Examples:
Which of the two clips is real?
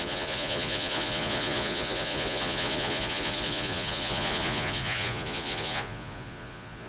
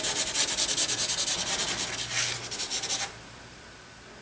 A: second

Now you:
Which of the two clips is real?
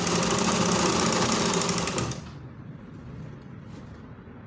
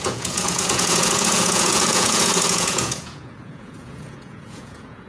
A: first